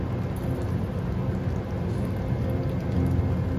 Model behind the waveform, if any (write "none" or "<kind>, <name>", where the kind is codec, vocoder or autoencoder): none